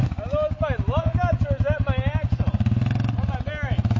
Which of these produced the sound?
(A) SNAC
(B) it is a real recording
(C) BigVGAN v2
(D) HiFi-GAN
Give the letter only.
B